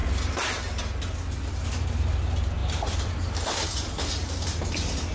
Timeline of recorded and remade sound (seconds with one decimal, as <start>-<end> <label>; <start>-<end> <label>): 0.0-2.6 recorded; 2.6-4.6 remade; 4.6-5.1 recorded